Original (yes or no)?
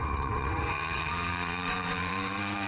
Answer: no